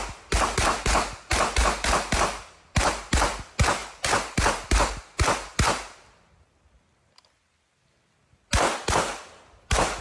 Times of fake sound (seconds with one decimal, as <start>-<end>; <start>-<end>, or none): none